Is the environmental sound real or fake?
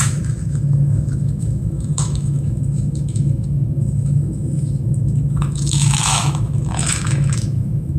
fake